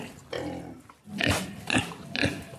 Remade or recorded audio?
recorded